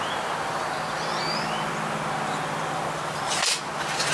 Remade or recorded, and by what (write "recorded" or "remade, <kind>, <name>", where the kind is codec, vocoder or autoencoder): recorded